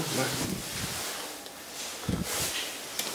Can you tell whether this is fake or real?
real